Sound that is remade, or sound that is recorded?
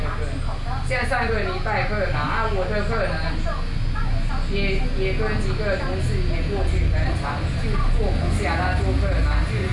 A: recorded